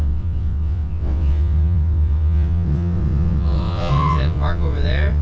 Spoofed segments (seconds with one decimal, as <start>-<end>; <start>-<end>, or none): 0.0-5.2